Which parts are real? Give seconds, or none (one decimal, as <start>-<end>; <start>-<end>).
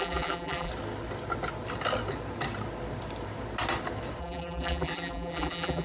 0.7-4.2